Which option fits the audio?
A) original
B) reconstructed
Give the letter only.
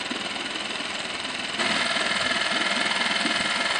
A